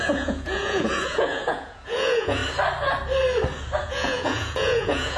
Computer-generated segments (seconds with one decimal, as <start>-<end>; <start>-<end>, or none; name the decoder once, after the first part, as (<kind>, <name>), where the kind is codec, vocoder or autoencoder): 0.0-2.4 (vocoder, Vocos); 3.8-5.2